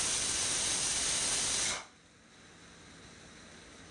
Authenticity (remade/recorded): recorded